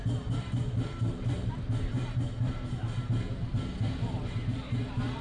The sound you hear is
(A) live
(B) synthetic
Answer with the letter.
B